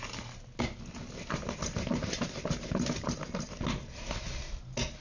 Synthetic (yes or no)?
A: no